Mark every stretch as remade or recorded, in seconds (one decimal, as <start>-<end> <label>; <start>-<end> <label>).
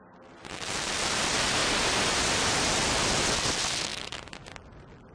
0.0-5.1 recorded